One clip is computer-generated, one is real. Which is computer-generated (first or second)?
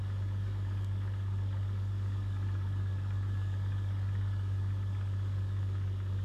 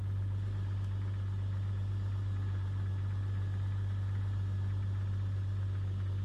first